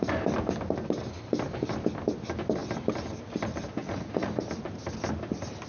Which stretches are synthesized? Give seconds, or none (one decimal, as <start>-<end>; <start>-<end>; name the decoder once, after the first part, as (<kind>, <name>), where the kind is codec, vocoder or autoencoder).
3.8-4.4 (vocoder, Vocos)